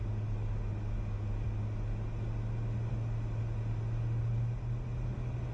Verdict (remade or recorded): recorded